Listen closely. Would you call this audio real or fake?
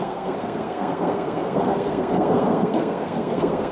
fake